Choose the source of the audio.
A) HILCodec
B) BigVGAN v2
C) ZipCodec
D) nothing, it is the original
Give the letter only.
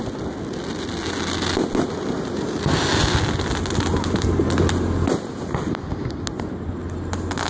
D